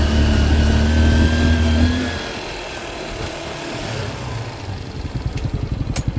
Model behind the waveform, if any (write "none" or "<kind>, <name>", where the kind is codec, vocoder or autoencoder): none